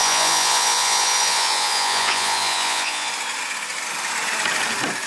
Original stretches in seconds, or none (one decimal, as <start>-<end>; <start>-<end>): 3.1-5.1